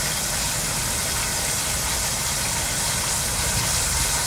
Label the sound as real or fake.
real